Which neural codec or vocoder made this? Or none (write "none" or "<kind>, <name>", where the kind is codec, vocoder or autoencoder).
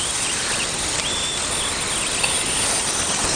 none